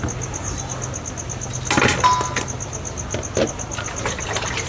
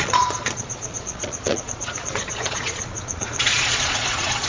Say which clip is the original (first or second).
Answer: first